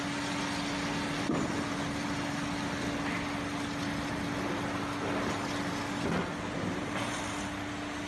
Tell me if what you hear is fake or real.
real